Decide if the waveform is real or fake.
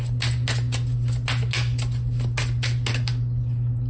real